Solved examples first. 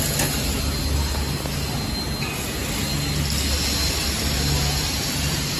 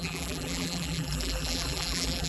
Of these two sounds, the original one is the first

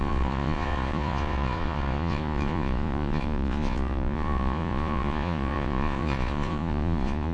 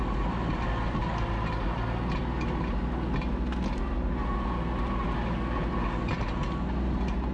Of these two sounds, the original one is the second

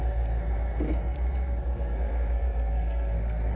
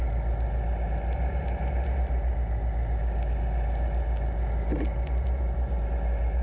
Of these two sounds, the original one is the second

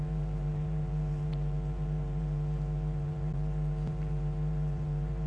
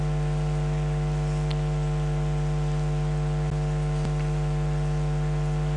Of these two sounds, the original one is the second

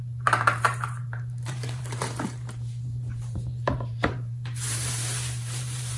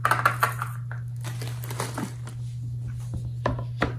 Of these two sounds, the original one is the second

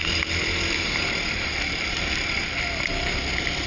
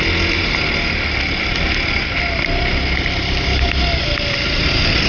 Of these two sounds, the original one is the second